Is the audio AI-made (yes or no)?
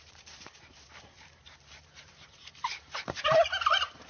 yes